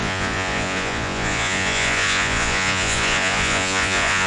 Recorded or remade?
remade